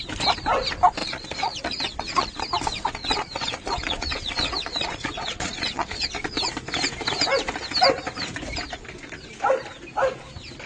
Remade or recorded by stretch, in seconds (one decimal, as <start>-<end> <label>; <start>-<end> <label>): 0.0-1.0 recorded; 1.0-2.4 remade; 2.4-3.0 recorded; 3.0-6.2 remade; 6.2-10.7 recorded